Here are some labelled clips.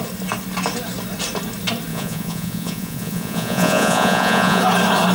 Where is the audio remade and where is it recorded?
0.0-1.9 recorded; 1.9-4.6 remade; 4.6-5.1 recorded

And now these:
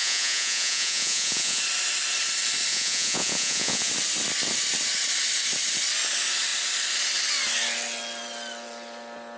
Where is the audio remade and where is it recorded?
0.0-1.6 remade; 1.6-2.7 recorded; 2.7-3.9 remade; 3.9-9.4 recorded

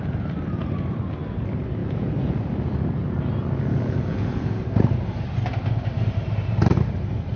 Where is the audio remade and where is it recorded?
0.0-1.8 recorded; 1.8-2.4 remade; 2.4-3.7 recorded; 3.7-4.6 remade; 4.6-7.4 recorded

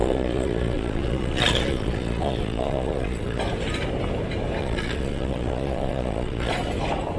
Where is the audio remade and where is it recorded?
0.0-3.4 remade; 3.4-4.6 recorded; 4.6-6.5 remade; 6.5-7.2 recorded

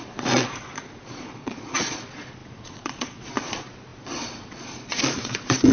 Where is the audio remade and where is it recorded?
0.0-5.7 remade

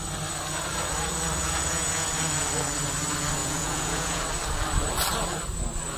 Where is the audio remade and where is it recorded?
0.0-1.4 recorded; 1.4-2.1 remade; 2.1-3.4 recorded; 3.4-4.2 remade; 4.2-6.0 recorded

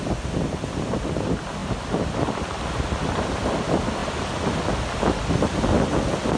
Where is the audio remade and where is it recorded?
0.0-6.4 recorded